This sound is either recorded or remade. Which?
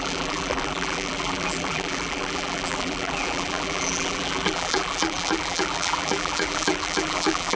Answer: remade